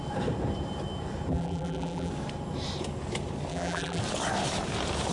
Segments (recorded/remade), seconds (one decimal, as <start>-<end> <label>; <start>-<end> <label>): 0.0-1.3 recorded; 1.3-2.1 remade; 2.1-3.5 recorded; 3.5-4.0 remade; 4.0-5.1 recorded